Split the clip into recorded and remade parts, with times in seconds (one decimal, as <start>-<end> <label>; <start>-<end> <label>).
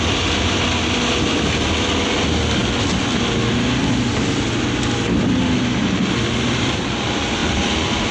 0.0-8.1 recorded